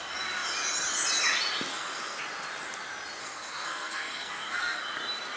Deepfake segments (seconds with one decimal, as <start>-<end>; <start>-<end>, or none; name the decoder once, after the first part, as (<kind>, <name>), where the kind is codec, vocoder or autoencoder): 1.7-2.2 (codec, SNAC); 3.2-4.8